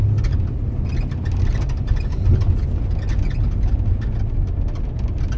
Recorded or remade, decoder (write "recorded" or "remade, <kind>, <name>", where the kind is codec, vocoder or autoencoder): recorded